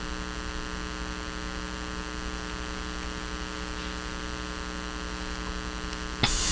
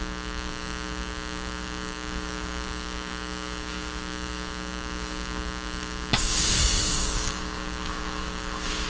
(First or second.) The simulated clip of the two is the second